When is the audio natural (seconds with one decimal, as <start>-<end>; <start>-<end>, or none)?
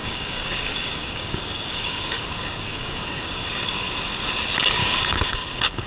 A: 3.5-4.8